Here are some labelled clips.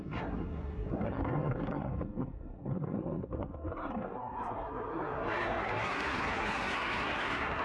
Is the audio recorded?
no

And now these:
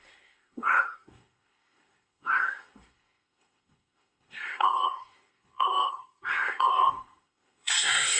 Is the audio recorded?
no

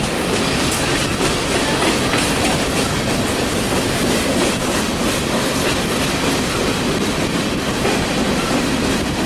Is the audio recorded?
yes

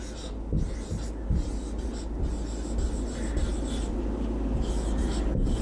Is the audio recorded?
yes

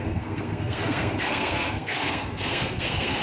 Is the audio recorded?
no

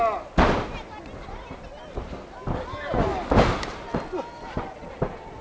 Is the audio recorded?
yes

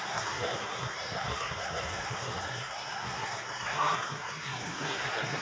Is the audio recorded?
no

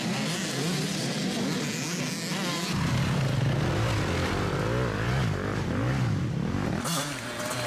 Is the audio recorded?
yes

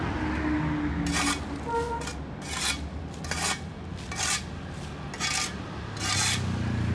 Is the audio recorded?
yes